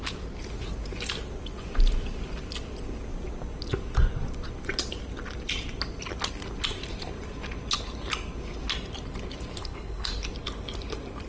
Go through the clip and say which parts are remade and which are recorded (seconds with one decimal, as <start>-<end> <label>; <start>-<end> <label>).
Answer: 0.0-9.6 recorded; 9.6-10.1 remade; 10.1-11.3 recorded